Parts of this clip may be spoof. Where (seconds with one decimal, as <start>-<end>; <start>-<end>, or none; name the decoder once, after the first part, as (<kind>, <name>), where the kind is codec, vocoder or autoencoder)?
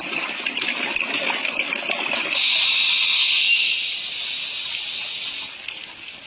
none